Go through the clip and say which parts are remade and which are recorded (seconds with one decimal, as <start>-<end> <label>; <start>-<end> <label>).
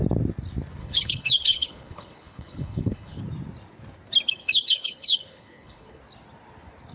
0.0-0.8 recorded; 0.8-3.2 remade; 3.2-4.4 recorded; 4.4-6.0 remade; 6.0-6.9 recorded